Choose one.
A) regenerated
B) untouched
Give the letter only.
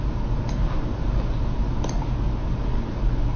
B